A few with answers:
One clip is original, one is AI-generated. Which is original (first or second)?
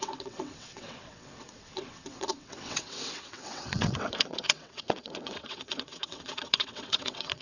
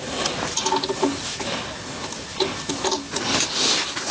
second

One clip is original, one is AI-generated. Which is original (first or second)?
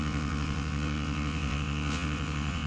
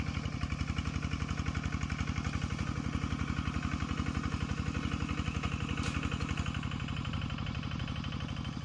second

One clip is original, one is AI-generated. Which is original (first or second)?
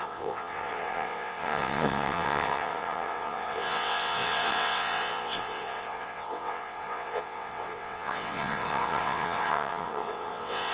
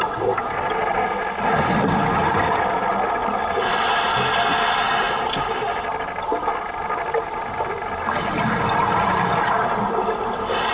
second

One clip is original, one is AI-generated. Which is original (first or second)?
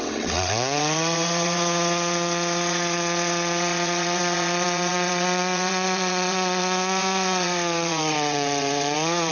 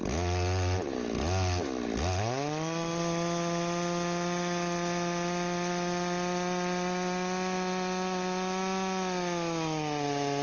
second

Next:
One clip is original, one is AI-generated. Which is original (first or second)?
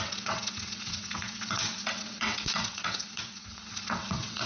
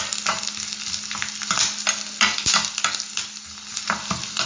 second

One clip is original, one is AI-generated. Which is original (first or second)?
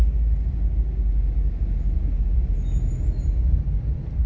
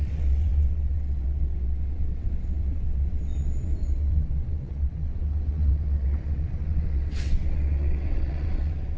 first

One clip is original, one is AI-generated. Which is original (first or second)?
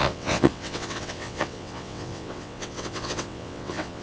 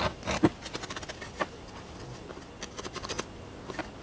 second